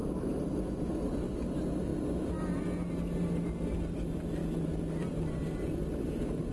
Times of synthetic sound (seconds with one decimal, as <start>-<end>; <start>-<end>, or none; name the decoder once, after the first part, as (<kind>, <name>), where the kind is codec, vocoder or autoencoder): 0.0-1.9 (vocoder, BigVGAN v2); 2.4-6.5